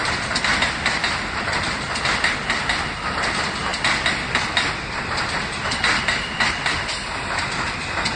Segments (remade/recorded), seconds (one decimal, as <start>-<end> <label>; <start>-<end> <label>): 0.0-1.7 remade; 1.7-8.2 recorded

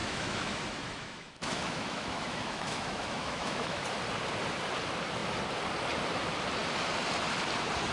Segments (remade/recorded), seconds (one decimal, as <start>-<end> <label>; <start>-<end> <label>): 0.0-3.8 remade; 3.8-7.9 recorded

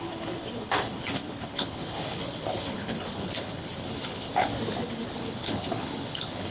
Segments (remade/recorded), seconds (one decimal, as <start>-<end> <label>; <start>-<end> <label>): 0.0-4.5 remade; 4.5-5.2 recorded; 5.2-6.5 remade

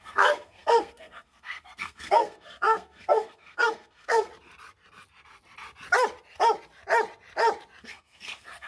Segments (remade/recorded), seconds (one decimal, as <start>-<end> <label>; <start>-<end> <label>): 0.0-4.3 remade; 4.3-7.8 recorded; 7.8-8.7 remade

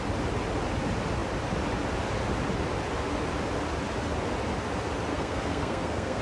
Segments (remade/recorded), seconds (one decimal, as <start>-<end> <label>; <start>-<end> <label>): 0.0-5.1 recorded; 5.1-6.2 remade

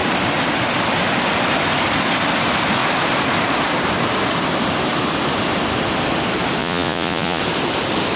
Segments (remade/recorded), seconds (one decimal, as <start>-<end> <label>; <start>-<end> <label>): 0.0-6.6 recorded; 6.6-7.4 remade; 7.4-8.2 recorded

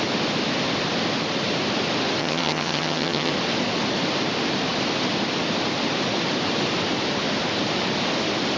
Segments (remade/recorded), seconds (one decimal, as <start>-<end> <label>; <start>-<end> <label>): 0.0-2.2 recorded; 2.2-3.3 remade; 3.3-8.6 recorded